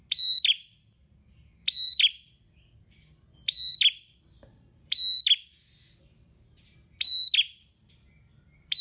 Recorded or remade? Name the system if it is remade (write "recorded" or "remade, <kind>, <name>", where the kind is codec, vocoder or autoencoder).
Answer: recorded